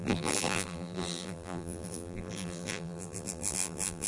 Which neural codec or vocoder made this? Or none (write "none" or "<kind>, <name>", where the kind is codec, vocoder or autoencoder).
vocoder, BigVGAN v2